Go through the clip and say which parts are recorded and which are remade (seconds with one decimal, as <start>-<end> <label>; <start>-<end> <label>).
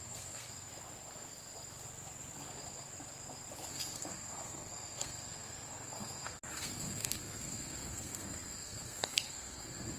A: 0.0-0.7 remade; 0.7-3.7 recorded; 3.7-10.0 remade